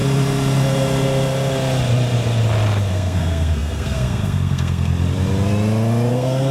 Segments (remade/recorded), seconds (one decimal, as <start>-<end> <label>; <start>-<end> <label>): 0.0-2.9 recorded; 2.9-4.9 remade; 4.9-6.1 recorded; 6.1-6.5 remade